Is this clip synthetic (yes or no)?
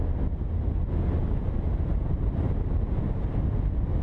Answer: no